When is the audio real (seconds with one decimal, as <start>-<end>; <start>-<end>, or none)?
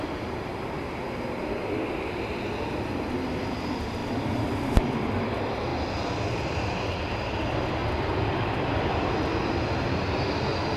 0.0-4.0; 4.8-10.8